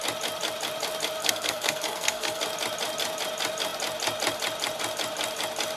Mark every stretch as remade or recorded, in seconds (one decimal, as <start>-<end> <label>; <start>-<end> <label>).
0.0-1.2 recorded; 1.2-2.4 remade; 2.4-5.8 recorded